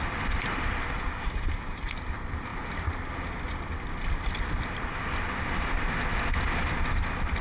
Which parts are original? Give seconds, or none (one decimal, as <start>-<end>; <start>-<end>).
0.0-7.4